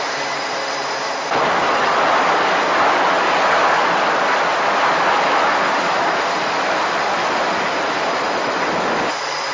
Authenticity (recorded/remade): recorded